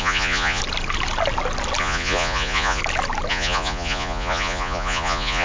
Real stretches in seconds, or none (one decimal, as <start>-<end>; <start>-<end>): 0.6-1.8; 2.8-3.3